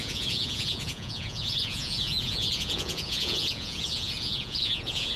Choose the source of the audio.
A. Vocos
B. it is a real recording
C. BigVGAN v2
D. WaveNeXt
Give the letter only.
A